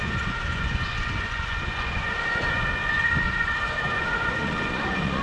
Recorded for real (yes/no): no